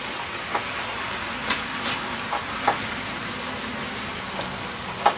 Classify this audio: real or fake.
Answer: real